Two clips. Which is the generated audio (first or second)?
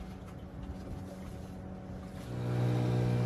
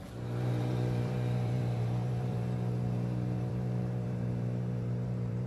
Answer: second